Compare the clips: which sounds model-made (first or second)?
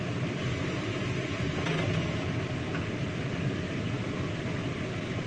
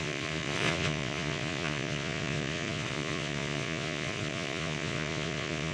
second